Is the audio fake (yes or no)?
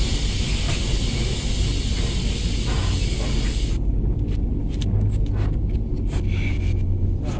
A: no